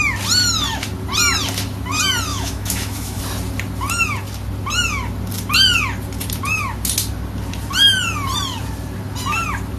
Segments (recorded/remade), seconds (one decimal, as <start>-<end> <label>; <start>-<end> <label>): 0.0-2.3 recorded; 2.3-3.2 remade; 3.2-9.8 recorded